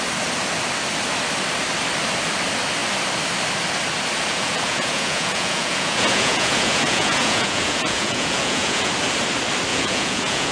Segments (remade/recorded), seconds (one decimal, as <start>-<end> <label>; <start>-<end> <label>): 0.0-4.3 recorded; 4.3-8.9 remade; 8.9-9.7 recorded; 9.7-10.5 remade